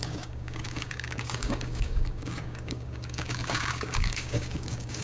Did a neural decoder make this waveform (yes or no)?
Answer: yes